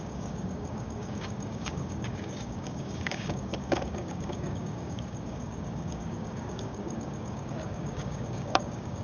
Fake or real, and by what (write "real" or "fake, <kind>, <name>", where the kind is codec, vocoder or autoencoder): fake, codec, DAC